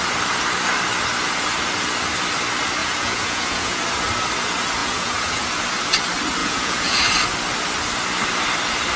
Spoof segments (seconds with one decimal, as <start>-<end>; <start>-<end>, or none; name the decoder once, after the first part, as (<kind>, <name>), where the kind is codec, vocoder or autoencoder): 2.8-3.8 (vocoder, Vocos); 4.8-5.5; 6.4-7.0